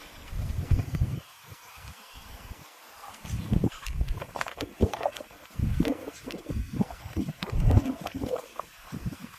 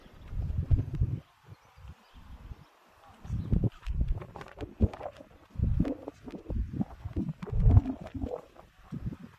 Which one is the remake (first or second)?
first